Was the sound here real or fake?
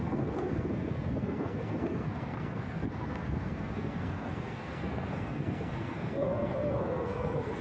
fake